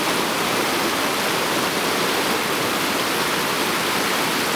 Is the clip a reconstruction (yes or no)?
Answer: no